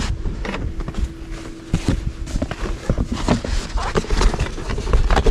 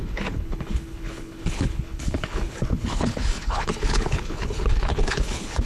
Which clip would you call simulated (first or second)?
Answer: second